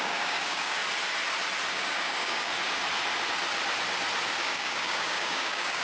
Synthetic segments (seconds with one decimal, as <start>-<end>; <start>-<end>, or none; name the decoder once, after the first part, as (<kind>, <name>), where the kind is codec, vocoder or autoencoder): 0.0-0.8 (codec, DAC); 1.7-2.5; 4.4-5.8